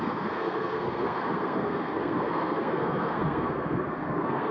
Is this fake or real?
fake